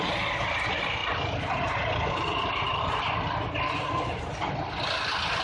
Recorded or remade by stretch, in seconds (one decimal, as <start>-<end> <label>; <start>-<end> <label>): 0.0-5.4 recorded